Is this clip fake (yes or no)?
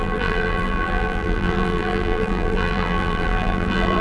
yes